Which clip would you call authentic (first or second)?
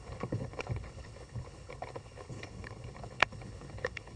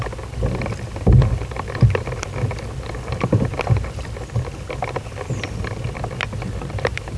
second